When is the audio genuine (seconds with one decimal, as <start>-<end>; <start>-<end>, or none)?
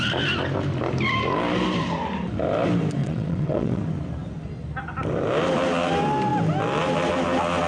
0.0-3.0; 3.8-7.7